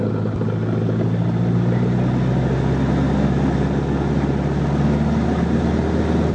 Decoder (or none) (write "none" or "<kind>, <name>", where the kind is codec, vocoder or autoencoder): none